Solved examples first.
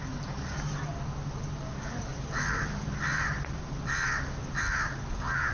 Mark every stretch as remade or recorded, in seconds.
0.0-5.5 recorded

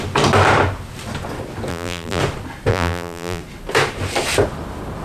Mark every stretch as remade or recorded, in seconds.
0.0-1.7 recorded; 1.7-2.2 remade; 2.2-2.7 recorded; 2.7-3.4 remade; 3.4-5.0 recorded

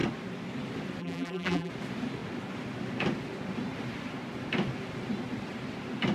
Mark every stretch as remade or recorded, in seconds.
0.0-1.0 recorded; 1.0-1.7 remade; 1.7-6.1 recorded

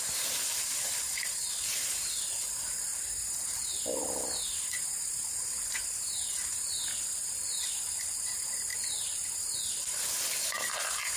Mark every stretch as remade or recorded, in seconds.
0.0-2.9 remade; 2.9-7.0 recorded; 7.0-11.2 remade

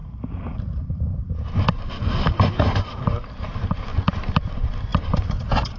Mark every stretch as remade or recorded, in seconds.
0.0-1.2 remade; 1.2-2.9 recorded; 2.9-4.9 remade; 4.9-5.8 recorded

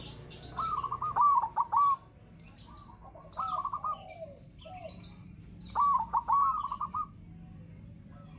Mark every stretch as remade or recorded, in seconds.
0.0-8.4 recorded

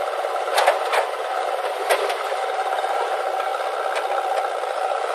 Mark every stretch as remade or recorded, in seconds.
0.0-3.5 remade; 3.5-4.6 recorded; 4.6-5.1 remade